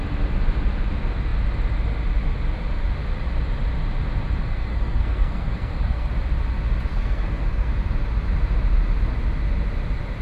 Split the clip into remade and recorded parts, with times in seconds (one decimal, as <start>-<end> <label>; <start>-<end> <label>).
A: 0.0-4.4 recorded; 4.4-6.1 remade; 6.1-6.9 recorded; 6.9-7.7 remade; 7.7-10.2 recorded

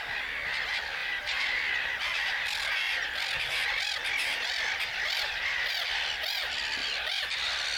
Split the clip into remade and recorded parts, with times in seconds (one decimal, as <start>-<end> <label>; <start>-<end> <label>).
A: 0.0-1.0 recorded; 1.0-5.7 remade; 5.7-6.8 recorded; 6.8-7.8 remade